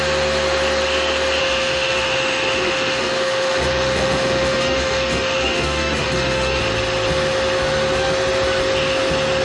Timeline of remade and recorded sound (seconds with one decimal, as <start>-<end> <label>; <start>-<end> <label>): 0.0-1.4 recorded; 1.4-6.6 remade; 6.6-9.4 recorded